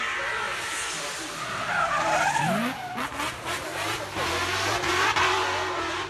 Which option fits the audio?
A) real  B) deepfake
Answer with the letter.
A